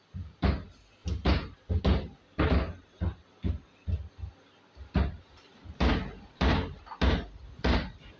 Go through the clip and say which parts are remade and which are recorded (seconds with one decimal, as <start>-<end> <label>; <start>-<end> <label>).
0.0-8.2 recorded

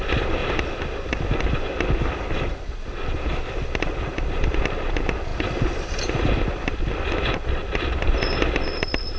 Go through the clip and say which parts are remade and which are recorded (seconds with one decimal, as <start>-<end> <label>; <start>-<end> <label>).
0.0-0.4 remade; 0.4-2.5 recorded; 2.5-9.2 remade

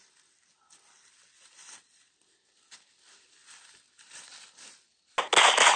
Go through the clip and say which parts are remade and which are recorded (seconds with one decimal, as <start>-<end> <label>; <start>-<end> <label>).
0.0-5.8 recorded

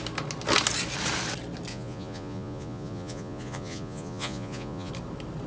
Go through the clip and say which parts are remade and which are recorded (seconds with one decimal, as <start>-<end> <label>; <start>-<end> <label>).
0.0-1.7 recorded; 1.7-4.9 remade; 4.9-5.5 recorded

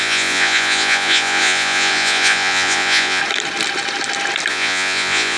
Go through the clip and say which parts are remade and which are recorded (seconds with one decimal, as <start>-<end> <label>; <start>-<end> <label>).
0.0-3.2 remade; 3.2-4.5 recorded; 4.5-5.4 remade

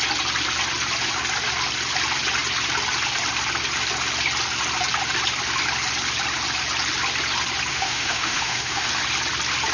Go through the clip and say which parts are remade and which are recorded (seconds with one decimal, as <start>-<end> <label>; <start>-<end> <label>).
0.0-7.7 recorded; 7.7-8.9 remade; 8.9-9.7 recorded